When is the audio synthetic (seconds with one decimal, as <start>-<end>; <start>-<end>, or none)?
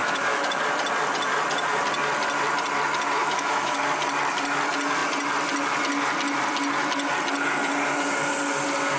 0.0-0.6; 3.2-3.8